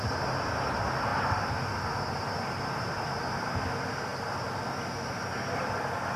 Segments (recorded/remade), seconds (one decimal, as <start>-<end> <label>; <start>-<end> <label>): 0.0-6.2 recorded